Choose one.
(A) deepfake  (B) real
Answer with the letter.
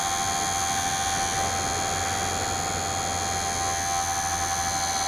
B